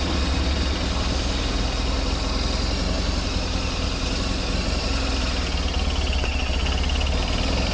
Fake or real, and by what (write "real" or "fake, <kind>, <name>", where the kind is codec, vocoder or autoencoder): real